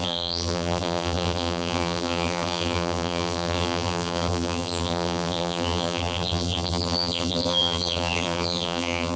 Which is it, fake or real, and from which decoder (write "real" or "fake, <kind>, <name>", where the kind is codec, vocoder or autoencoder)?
fake, vocoder, BigVGAN v2